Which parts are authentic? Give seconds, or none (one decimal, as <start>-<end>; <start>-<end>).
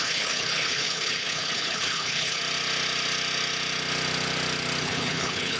2.4-4.8